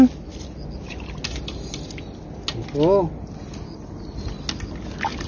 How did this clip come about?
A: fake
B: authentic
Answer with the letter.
B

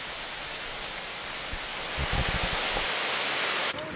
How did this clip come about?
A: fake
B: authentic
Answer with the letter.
B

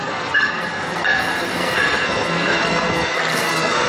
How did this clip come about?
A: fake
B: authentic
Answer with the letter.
A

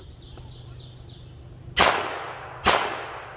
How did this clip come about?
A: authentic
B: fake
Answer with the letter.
A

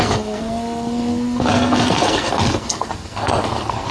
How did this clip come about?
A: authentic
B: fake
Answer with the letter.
B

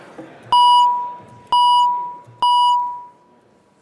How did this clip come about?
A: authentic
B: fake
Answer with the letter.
A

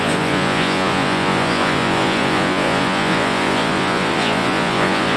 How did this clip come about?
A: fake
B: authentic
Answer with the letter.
A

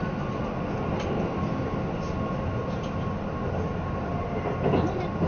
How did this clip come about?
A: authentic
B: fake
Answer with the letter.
A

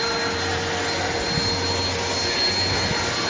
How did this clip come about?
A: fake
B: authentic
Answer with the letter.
B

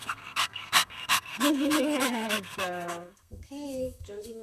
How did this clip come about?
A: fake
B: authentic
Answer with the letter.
A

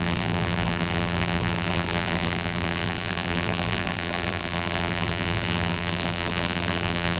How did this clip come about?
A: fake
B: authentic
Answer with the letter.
A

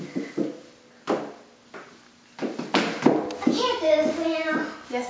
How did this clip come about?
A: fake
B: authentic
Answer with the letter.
B